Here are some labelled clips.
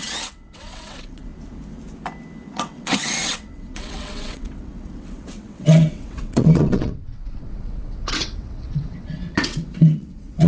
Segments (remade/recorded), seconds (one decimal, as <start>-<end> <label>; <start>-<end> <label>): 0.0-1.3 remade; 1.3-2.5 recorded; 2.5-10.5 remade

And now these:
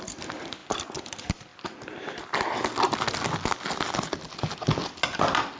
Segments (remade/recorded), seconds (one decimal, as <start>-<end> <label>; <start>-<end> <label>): 0.0-5.6 recorded

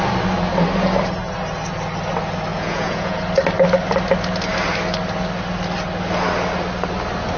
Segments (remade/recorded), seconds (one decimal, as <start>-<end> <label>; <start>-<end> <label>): 0.0-2.5 recorded; 2.5-3.2 remade; 3.2-7.4 recorded

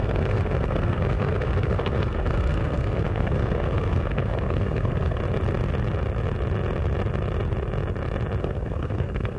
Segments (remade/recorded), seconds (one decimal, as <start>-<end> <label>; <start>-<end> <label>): 0.0-5.2 remade; 5.2-8.4 recorded; 8.4-9.4 remade